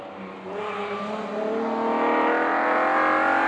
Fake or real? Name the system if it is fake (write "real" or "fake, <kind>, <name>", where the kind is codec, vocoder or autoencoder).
real